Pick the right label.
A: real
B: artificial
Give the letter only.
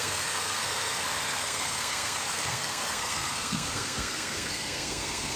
B